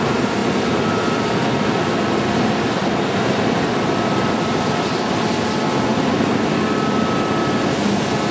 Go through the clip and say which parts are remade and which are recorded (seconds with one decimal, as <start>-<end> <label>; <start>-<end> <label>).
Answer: 0.0-0.4 recorded; 0.4-4.8 remade; 4.8-8.3 recorded